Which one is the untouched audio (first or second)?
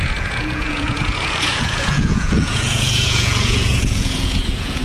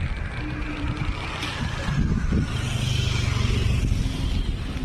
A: second